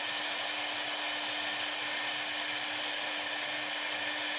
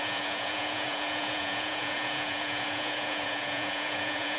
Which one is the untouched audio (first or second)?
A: first